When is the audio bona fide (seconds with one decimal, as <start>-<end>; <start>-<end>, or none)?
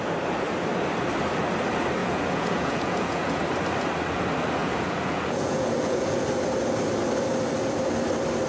0.0-2.0; 3.4-4.6; 6.3-8.5